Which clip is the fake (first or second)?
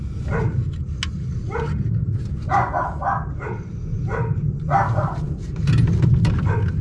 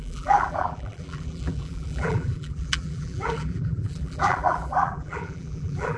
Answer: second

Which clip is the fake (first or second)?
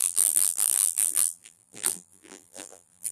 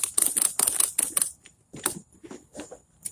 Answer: first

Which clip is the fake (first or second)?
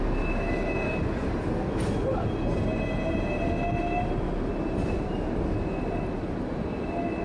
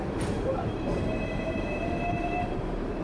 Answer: second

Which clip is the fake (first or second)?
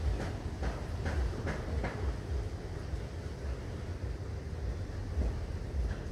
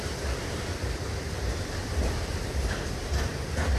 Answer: second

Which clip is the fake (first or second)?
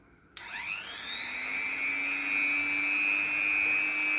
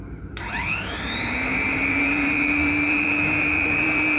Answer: second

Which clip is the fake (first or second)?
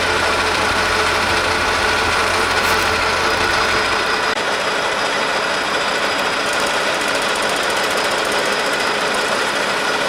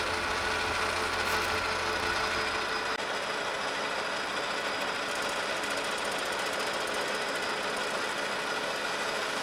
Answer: first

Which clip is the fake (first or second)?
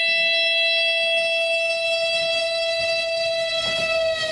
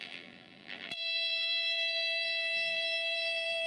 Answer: second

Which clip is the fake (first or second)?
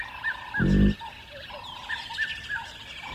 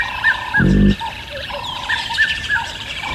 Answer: second